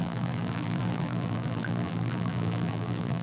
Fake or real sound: fake